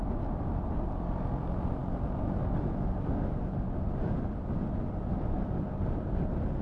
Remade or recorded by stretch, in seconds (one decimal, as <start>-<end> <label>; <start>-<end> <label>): 0.0-6.6 recorded